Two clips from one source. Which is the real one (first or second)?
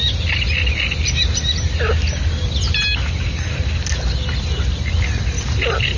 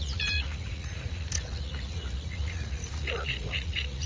first